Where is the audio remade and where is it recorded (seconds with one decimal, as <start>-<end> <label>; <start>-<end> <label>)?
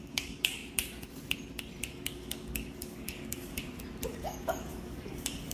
0.0-0.6 remade; 0.6-1.9 recorded; 1.9-3.6 remade; 3.6-4.1 recorded; 4.1-5.5 remade